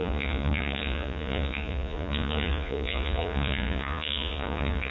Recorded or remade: remade